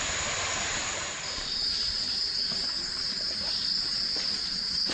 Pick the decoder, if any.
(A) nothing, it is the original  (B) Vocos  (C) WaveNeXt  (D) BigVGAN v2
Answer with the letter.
A